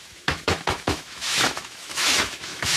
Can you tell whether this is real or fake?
fake